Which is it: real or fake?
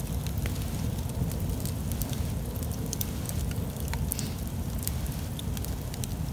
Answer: real